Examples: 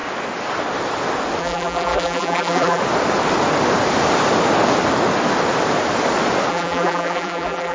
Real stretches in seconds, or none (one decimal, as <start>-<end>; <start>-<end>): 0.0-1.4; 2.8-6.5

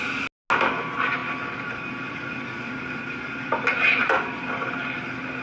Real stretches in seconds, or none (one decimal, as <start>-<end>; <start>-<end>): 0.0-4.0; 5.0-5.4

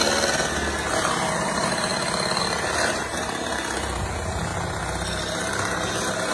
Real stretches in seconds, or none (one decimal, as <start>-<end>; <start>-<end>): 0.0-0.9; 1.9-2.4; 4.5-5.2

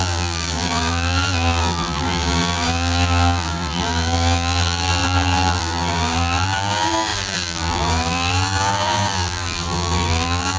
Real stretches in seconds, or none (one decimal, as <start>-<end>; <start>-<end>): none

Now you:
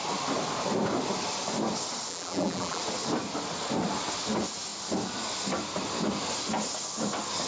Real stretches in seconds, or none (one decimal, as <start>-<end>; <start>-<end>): 0.0-2.1; 2.8-7.5

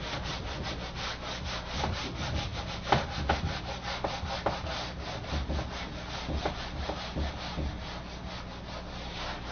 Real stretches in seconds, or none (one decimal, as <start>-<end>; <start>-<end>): 0.0-9.5

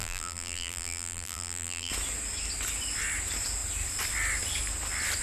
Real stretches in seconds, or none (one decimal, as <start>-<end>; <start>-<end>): 1.9-5.2